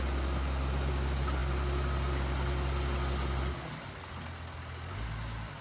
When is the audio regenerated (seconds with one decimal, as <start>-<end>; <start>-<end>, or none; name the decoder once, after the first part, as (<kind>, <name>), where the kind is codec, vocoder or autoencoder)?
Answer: none